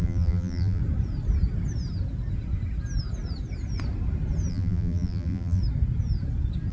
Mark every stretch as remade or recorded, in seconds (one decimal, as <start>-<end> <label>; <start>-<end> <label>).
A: 0.0-0.8 remade; 0.8-4.5 recorded; 4.5-5.6 remade; 5.6-6.7 recorded